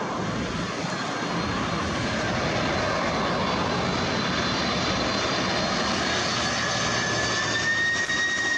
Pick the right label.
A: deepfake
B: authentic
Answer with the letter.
B